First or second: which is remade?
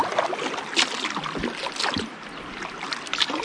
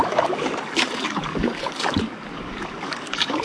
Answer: second